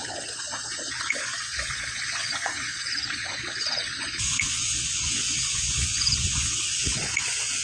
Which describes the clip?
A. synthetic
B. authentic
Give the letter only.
A